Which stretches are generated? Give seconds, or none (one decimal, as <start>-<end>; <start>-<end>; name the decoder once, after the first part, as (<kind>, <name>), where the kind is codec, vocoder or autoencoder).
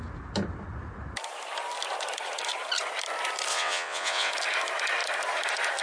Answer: 3.5-4.3 (vocoder, WaveNeXt)